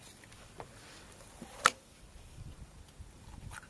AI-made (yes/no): yes